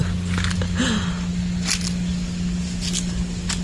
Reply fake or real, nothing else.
real